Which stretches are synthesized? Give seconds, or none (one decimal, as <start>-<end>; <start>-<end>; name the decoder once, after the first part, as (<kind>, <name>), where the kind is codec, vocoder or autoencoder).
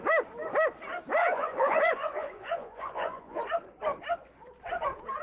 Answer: 1.2-3.4 (vocoder, Vocos)